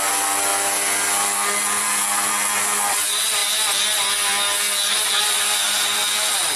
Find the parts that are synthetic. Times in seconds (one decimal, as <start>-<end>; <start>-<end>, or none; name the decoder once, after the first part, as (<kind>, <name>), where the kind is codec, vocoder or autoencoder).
none